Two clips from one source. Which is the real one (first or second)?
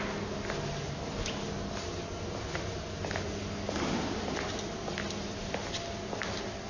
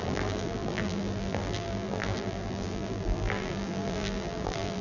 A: first